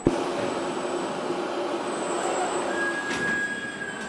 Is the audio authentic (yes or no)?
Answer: yes